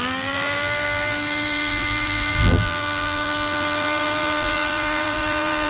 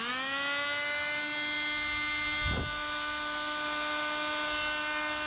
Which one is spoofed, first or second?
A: first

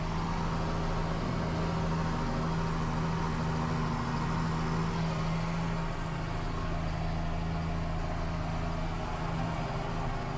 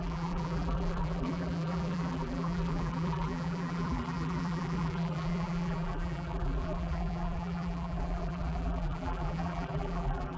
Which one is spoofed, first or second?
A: second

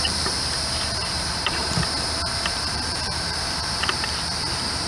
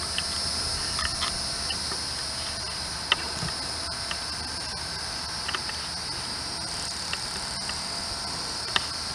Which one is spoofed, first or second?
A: first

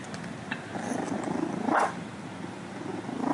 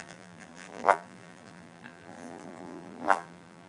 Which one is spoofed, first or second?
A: second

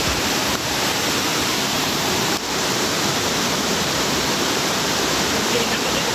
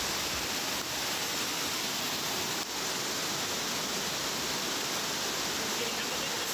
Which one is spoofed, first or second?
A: first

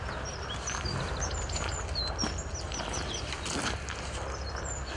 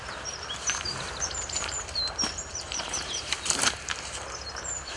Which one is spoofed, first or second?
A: second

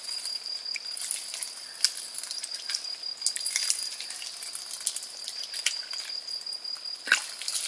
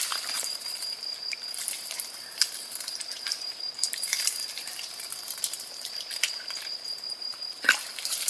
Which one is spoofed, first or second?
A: second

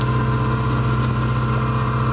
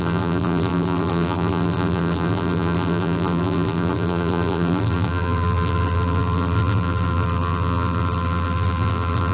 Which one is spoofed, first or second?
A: second